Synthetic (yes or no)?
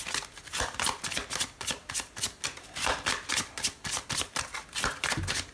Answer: no